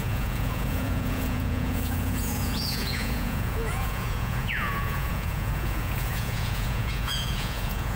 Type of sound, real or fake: fake